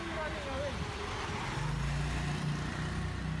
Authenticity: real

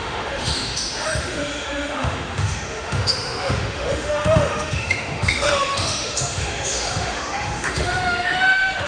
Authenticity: fake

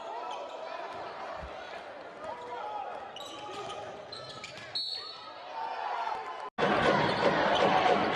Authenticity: real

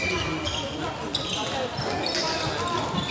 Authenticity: real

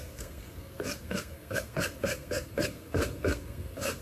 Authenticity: fake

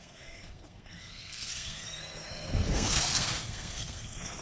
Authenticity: fake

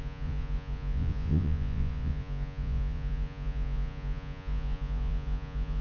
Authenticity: fake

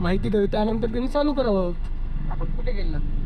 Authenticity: fake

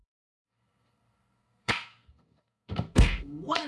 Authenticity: fake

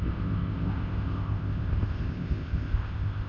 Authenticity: fake